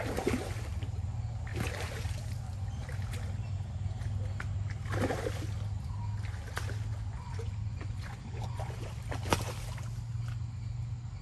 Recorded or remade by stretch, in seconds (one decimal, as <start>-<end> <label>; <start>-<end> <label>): 0.0-6.9 recorded; 6.9-8.9 remade; 8.9-11.2 recorded